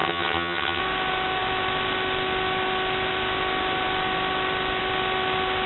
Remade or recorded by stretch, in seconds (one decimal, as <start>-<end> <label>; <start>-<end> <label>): 0.0-0.8 remade; 0.8-5.7 recorded